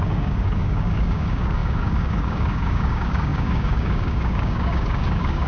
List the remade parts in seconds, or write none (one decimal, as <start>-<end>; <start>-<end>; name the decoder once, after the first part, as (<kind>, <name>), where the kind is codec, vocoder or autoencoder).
0.0-5.5 (codec, DAC)